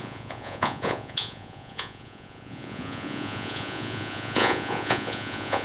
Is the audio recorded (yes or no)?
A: no